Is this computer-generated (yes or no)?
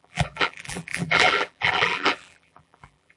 yes